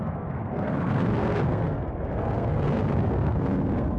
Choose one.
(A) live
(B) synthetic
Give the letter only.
B